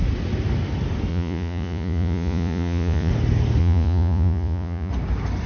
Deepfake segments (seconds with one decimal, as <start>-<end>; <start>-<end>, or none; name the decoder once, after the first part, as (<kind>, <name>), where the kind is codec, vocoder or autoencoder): 1.1-3.1 (vocoder, Vocos); 3.6-4.9